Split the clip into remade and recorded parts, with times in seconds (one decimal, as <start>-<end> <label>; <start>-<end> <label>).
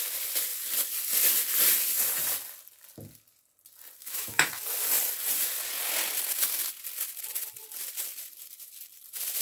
0.0-4.0 recorded; 4.0-4.5 remade; 4.5-9.4 recorded